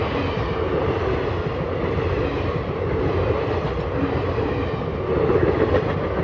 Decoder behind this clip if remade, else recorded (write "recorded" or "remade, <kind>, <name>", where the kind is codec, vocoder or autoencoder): recorded